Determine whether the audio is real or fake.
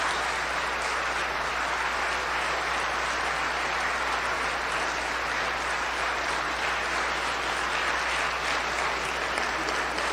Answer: real